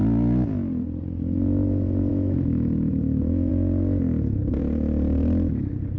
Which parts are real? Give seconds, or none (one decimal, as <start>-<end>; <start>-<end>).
0.0-2.1; 3.5-6.0